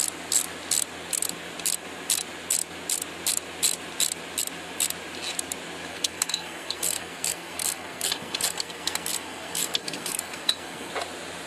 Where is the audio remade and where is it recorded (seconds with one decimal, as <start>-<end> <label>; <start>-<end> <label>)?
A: 0.0-5.9 recorded; 5.9-10.9 remade; 10.9-11.5 recorded